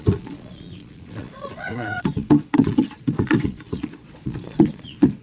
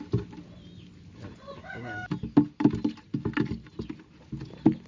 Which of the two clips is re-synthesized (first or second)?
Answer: first